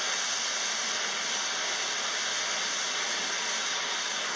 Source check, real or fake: real